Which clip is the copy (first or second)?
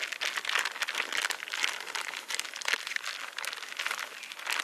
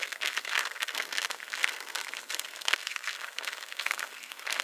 second